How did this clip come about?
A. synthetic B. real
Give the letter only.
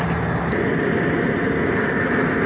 B